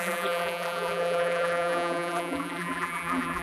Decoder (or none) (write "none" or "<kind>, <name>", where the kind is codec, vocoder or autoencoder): vocoder, BigVGAN v2